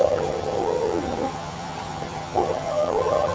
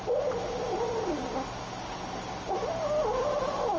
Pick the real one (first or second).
second